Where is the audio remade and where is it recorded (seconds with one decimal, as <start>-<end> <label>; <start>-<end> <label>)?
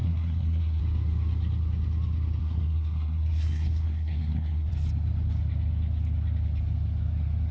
0.0-0.8 remade; 0.8-2.4 recorded; 2.4-4.7 remade; 4.7-7.5 recorded